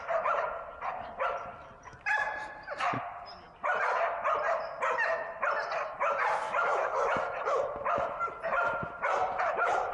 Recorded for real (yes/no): yes